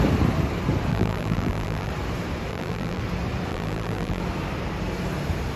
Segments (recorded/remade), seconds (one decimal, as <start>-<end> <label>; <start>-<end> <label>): 0.0-0.9 recorded; 0.9-1.9 remade; 1.9-2.5 recorded; 2.5-3.0 remade; 3.0-3.5 recorded; 3.5-4.2 remade; 4.2-5.6 recorded